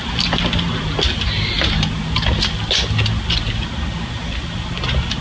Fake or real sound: real